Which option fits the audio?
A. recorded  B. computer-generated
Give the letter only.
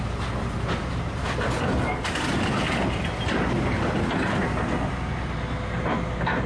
B